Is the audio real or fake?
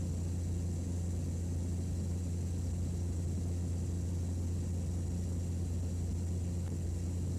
real